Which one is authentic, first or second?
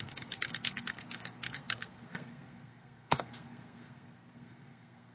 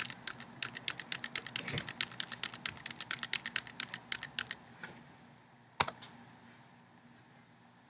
second